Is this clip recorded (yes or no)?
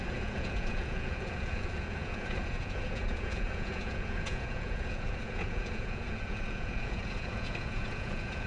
no